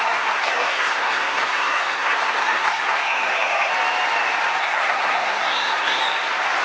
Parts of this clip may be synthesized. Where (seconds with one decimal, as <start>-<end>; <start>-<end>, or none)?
0.0-3.7; 4.6-6.0